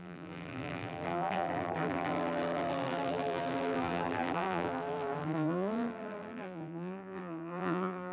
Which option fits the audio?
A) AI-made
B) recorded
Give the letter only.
A